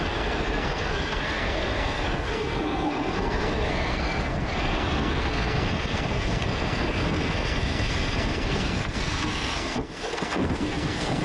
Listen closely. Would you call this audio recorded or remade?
remade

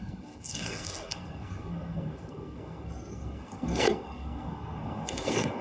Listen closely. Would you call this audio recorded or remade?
remade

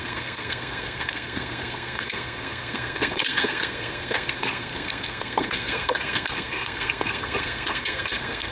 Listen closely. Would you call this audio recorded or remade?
remade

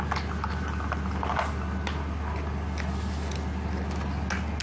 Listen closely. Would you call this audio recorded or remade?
recorded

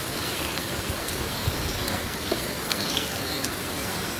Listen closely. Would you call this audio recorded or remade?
remade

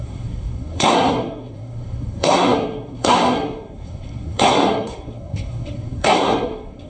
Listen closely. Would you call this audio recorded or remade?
remade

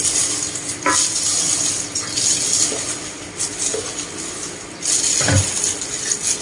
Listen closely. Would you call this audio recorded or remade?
recorded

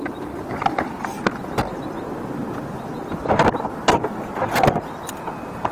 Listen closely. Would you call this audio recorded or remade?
recorded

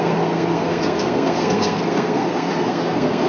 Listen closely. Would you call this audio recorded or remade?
remade